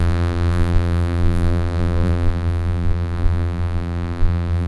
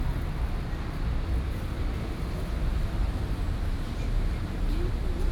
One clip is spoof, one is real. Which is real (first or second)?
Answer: second